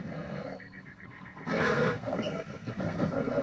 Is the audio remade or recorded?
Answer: remade